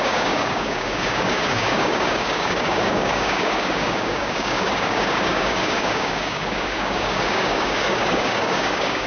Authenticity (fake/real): fake